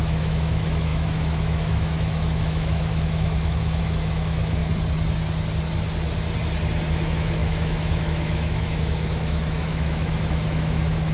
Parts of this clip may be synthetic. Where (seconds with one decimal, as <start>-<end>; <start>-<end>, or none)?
0.0-4.6; 6.9-11.1